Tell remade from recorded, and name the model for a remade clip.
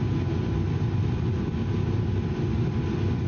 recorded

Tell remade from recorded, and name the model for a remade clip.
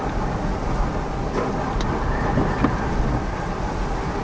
recorded